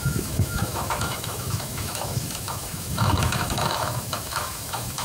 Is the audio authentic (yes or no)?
no